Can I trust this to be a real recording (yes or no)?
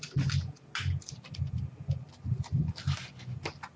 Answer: yes